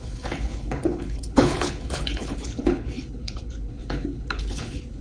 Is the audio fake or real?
fake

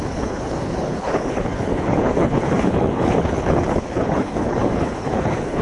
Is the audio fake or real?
fake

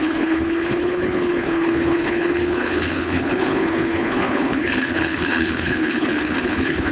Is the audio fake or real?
fake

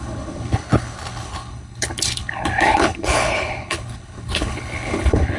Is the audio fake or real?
fake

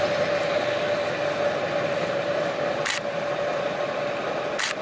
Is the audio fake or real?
real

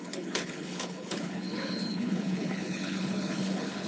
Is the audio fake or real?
fake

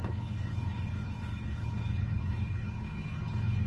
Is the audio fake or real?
fake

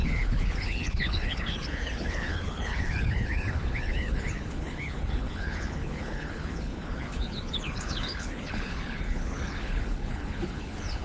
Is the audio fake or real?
fake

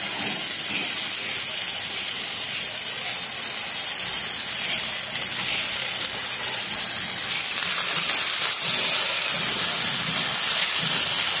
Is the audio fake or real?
real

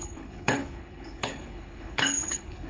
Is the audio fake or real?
fake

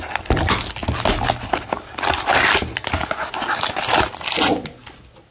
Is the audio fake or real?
real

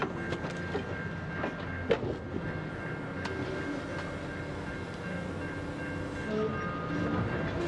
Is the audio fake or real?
real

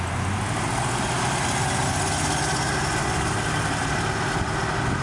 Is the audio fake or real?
real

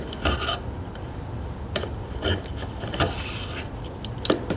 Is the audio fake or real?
real